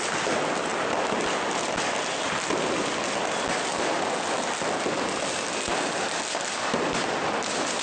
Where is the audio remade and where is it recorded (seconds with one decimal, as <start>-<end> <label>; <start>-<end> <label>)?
0.0-7.8 recorded

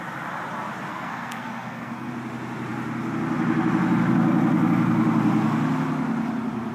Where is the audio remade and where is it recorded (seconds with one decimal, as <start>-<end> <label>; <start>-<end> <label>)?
0.0-0.9 recorded; 0.9-2.1 remade; 2.1-6.7 recorded

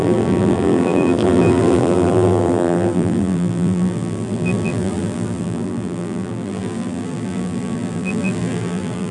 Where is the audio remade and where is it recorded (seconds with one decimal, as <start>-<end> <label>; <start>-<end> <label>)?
0.0-9.1 remade

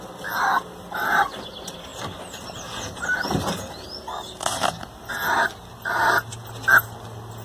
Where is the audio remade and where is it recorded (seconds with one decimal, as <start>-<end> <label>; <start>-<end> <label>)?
0.0-7.4 recorded

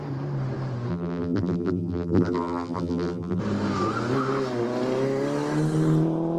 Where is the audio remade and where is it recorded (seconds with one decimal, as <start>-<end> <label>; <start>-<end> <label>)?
0.0-0.9 recorded; 0.9-3.4 remade; 3.4-6.4 recorded

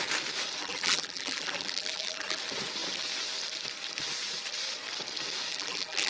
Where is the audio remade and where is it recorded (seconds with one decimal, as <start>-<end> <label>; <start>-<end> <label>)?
0.0-0.6 recorded; 0.6-2.4 remade; 2.4-5.5 recorded; 5.5-6.1 remade